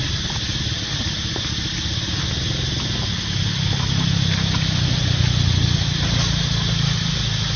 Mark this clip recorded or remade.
recorded